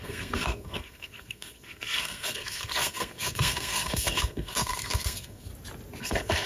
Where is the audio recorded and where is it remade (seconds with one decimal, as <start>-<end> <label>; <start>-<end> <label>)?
0.0-5.5 remade; 5.5-6.0 recorded; 6.0-6.5 remade

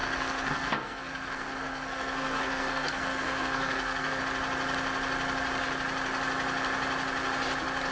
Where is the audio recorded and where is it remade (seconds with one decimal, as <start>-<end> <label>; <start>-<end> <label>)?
0.0-4.2 remade; 4.2-7.9 recorded

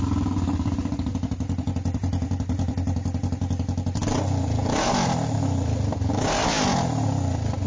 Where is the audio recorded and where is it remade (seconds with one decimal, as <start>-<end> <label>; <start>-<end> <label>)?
0.0-7.7 recorded

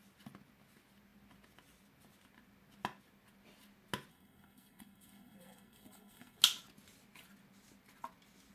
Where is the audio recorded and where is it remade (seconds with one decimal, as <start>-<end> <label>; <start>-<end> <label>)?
0.0-4.1 recorded; 4.1-6.4 remade; 6.4-8.5 recorded

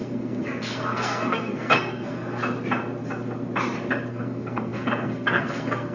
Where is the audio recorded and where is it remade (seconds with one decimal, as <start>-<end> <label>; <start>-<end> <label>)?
0.0-2.4 remade; 2.4-4.1 recorded; 4.1-5.9 remade

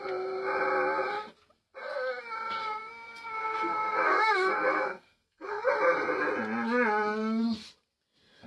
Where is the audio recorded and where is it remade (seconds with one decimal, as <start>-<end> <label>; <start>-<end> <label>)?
0.0-2.6 recorded; 2.6-5.7 remade; 5.7-8.5 recorded

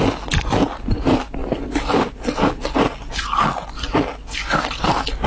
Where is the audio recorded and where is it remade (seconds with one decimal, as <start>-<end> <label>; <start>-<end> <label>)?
0.0-5.3 recorded